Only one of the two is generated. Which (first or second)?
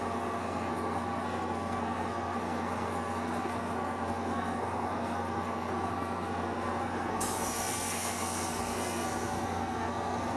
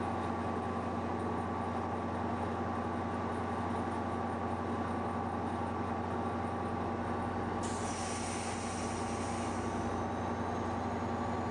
first